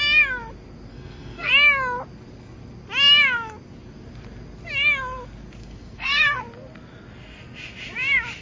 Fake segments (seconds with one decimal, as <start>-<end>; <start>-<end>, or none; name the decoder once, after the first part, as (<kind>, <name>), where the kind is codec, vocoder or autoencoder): 0.9-1.5 (codec, SNAC); 5.6-6.4